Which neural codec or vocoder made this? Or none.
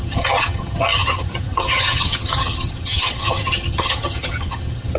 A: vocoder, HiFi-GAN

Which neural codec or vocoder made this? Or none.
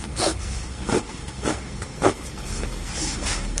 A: codec, SNAC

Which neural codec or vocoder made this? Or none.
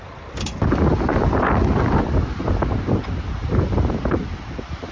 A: none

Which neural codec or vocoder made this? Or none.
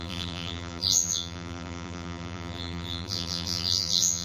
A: vocoder, BigVGAN v2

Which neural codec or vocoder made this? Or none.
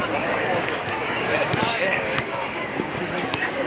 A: codec, DAC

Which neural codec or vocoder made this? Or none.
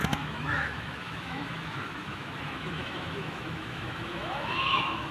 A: autoencoder, DAC-VAE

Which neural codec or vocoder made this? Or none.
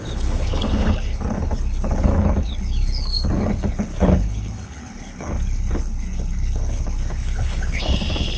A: codec, HILCodec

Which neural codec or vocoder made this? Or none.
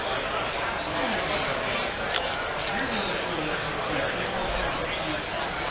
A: none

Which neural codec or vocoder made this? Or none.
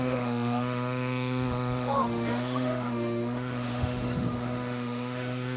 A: autoencoder, DAC-VAE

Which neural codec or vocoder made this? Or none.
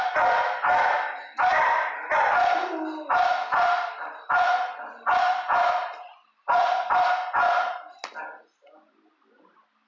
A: none